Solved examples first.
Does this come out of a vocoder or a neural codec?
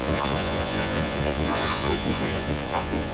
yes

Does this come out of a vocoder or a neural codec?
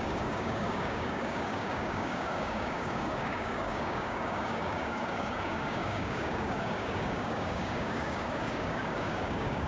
yes